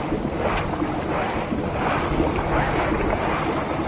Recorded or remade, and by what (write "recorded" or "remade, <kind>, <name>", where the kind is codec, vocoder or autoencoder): recorded